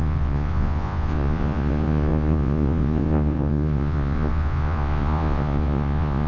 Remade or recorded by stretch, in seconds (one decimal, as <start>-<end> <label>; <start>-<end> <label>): 0.0-6.3 remade